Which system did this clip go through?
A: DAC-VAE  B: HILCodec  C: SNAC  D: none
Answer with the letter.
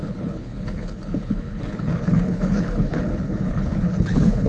B